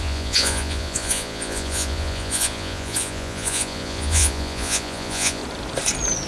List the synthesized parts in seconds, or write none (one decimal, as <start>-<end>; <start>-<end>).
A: 0.0-5.4